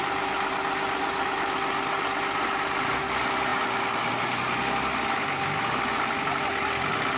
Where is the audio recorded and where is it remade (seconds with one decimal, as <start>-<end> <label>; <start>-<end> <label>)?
0.0-7.2 recorded